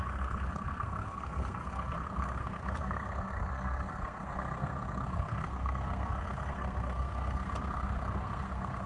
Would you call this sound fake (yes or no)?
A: yes